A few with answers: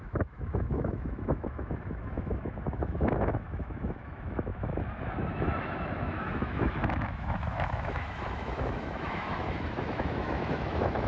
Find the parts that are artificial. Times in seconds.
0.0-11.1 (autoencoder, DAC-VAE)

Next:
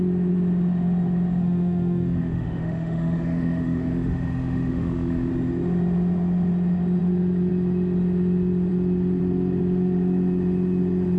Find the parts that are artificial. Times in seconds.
1.4-5.3 (autoencoder, DAC-VAE)

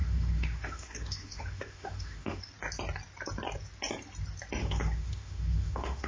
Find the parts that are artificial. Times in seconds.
0.0-2.4 (autoencoder, DAC-VAE); 4.6-6.1

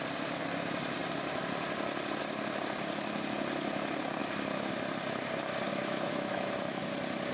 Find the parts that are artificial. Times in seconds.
4.2-4.7 (autoencoder, DAC-VAE); 5.7-6.8

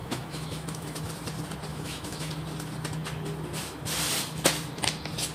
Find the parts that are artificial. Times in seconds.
0.0-1.1 (autoencoder, DAC-VAE); 1.7-2.3